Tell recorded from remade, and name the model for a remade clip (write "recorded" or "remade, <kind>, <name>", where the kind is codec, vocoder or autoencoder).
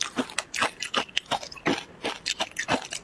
recorded